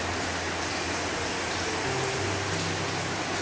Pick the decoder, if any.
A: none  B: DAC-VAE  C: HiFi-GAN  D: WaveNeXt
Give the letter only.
A